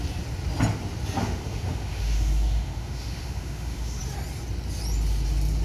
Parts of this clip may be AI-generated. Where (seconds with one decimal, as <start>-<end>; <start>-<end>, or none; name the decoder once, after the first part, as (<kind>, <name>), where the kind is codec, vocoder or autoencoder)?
1.2-4.0 (autoencoder, DAC-VAE)